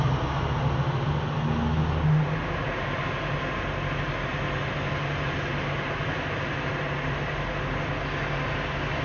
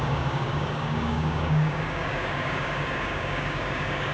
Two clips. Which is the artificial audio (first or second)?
second